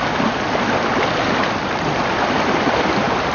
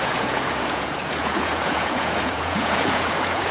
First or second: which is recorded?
first